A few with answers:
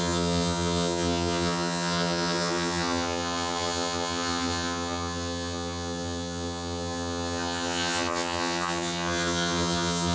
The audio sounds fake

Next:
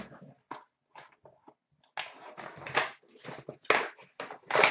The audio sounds real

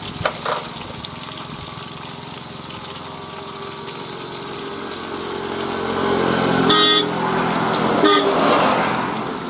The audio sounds real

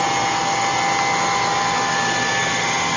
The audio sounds real